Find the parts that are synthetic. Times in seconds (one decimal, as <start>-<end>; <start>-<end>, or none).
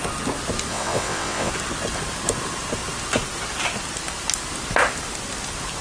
0.7-1.5